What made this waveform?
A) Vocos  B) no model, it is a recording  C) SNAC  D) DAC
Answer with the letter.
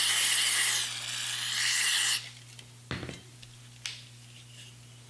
B